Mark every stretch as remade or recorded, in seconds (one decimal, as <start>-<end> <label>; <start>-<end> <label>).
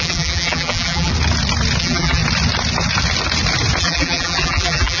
0.0-1.1 remade; 1.1-1.8 recorded; 1.8-2.2 remade; 2.2-3.8 recorded; 3.8-5.0 remade